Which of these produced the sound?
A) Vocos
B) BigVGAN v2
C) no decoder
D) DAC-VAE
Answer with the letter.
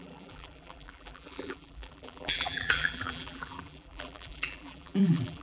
B